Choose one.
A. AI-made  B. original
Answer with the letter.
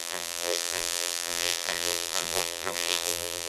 A